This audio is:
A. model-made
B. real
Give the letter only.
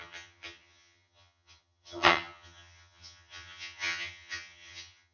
A